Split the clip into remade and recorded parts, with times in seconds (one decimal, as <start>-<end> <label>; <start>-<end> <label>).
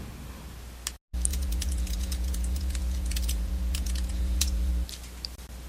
0.0-1.3 recorded; 1.3-4.7 remade; 4.7-5.7 recorded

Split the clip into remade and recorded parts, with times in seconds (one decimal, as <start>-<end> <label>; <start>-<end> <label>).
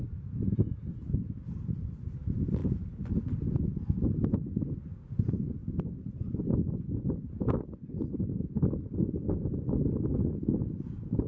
0.0-11.3 recorded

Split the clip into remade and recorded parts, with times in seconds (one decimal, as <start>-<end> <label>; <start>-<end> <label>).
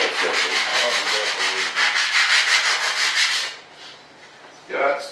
0.0-0.7 recorded; 0.7-1.3 remade; 1.3-5.1 recorded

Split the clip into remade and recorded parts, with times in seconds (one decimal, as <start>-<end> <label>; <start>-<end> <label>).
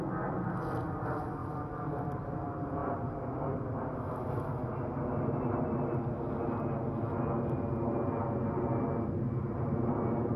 0.0-10.4 recorded